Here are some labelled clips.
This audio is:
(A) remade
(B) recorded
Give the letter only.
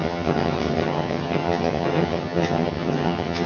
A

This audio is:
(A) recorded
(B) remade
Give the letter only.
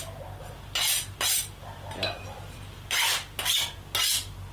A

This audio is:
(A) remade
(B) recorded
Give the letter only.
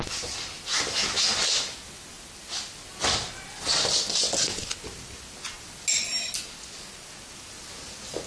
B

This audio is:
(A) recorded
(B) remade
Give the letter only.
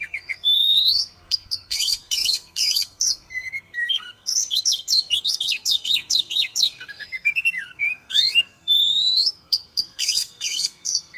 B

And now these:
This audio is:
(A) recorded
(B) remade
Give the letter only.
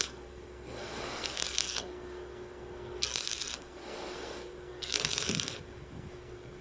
B